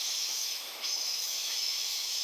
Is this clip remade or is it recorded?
remade